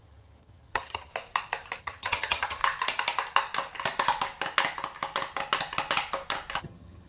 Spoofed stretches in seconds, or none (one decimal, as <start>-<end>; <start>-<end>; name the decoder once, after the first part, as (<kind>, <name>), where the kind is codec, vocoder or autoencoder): 0.0-1.1 (vocoder, HiFi-GAN); 1.8-2.6; 6.6-7.1